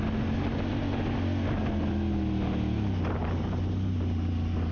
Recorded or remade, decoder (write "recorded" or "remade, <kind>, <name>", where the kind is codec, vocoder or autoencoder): recorded